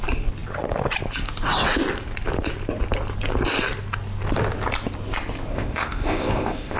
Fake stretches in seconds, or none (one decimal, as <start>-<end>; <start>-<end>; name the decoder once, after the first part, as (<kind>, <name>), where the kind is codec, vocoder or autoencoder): 5.5-6.8 (codec, ZipCodec)